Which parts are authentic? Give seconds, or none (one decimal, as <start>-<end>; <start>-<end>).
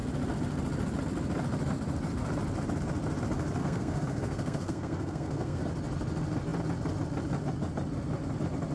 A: 0.0-3.6; 5.6-8.7